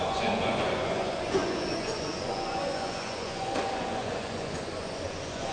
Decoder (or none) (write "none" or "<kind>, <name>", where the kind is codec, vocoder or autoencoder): vocoder, Vocos